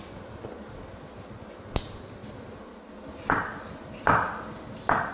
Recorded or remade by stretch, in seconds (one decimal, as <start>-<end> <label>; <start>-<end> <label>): 0.0-5.1 recorded